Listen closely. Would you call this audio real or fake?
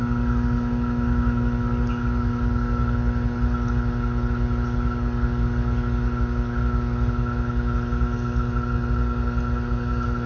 real